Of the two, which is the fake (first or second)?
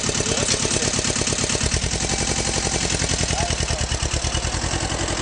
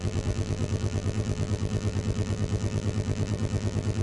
second